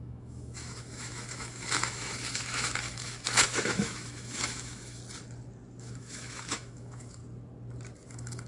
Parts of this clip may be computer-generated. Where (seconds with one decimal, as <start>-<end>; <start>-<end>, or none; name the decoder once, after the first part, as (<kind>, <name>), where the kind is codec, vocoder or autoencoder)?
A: 0.0-5.0 (autoencoder, DAC-VAE); 5.8-7.2; 8.1-8.5